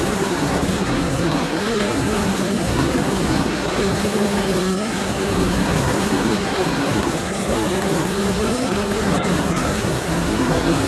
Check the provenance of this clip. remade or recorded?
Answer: remade